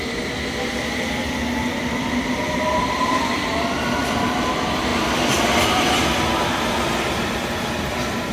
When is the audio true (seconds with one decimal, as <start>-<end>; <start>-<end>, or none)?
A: 0.0-2.7; 3.5-4.9; 6.0-8.3